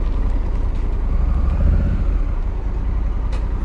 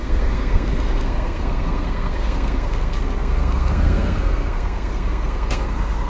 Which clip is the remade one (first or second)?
second